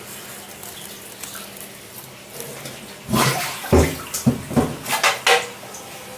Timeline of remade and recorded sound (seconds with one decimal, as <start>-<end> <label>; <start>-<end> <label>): 0.0-6.2 recorded